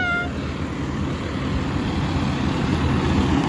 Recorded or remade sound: recorded